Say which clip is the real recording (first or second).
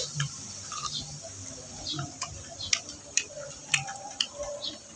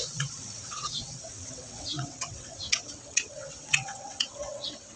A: first